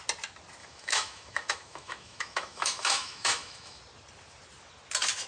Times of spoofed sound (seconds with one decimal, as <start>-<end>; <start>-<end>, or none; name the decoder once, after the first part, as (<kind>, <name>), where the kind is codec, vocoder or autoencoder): 0.6-3.8 (autoencoder, DAC-VAE)